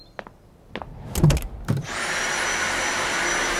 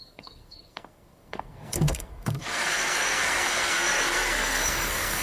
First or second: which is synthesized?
second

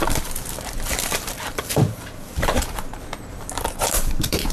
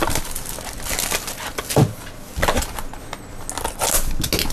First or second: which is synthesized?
first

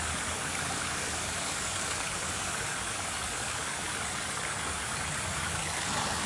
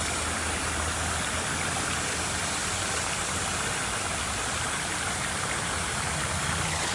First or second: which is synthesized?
first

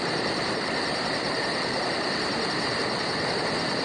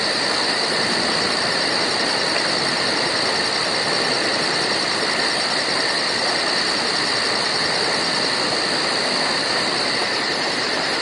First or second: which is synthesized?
first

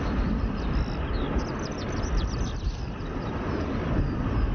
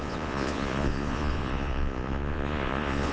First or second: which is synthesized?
second